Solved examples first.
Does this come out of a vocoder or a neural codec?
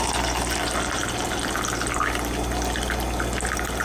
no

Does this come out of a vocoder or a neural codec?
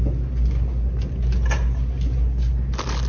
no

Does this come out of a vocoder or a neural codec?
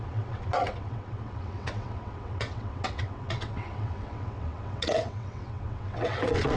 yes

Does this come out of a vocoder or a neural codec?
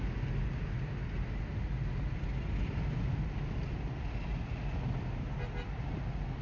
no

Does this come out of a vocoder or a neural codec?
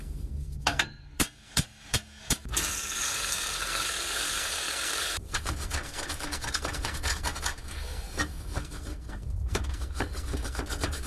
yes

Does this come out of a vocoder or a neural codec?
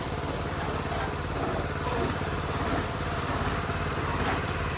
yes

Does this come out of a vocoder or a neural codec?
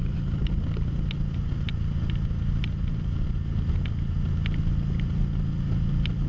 no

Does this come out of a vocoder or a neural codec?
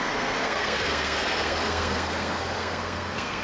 yes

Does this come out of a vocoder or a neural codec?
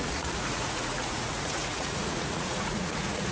yes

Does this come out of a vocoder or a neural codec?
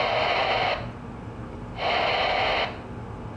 no